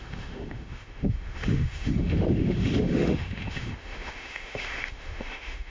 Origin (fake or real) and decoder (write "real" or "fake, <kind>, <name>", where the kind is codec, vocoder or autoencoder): fake, autoencoder, DAC-VAE